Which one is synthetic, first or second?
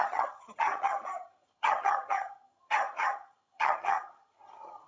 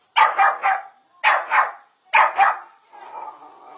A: first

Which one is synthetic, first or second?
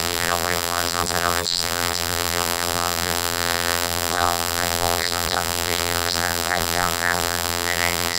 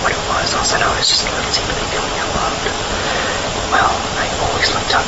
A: first